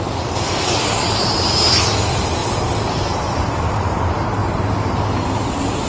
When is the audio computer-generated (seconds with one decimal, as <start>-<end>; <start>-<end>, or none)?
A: 2.4-4.0; 4.4-5.9